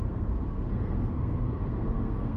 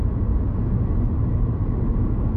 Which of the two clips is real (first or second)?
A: second